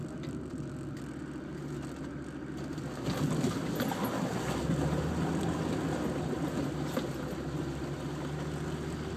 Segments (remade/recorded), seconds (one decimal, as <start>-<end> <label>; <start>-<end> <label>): 0.0-9.2 recorded